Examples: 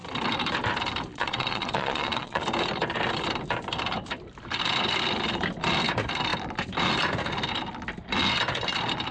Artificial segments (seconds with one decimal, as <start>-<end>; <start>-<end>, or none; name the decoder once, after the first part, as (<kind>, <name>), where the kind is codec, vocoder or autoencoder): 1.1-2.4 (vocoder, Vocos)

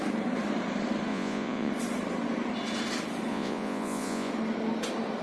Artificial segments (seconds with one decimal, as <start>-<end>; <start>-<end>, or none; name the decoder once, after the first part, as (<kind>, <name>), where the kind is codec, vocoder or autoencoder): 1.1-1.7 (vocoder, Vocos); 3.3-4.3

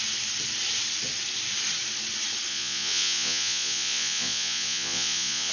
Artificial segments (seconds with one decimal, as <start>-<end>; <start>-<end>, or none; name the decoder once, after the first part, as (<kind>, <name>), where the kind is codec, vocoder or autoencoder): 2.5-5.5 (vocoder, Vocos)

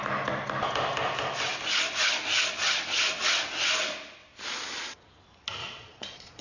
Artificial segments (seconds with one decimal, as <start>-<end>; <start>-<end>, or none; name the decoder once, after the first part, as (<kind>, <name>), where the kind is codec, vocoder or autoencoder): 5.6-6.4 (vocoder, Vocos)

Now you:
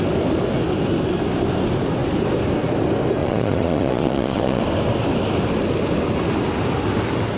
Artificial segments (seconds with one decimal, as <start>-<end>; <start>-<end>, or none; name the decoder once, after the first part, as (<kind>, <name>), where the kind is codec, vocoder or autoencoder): 3.2-4.6 (vocoder, Vocos)

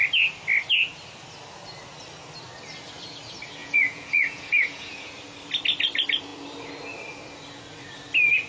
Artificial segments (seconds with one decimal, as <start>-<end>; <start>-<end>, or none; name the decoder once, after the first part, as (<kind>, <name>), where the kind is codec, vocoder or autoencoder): 3.6-5.1 (vocoder, Vocos)

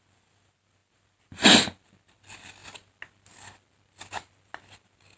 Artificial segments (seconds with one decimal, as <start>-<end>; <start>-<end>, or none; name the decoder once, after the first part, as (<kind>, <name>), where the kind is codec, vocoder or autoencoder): none